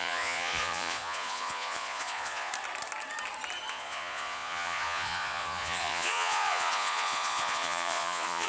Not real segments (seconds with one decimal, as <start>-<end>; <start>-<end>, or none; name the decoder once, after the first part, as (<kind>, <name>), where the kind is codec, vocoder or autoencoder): 0.0-2.5 (vocoder, Vocos); 3.7-8.5